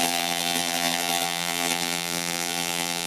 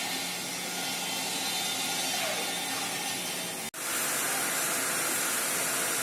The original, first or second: second